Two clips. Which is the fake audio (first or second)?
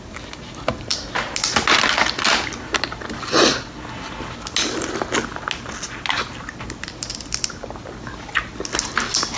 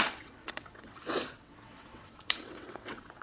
second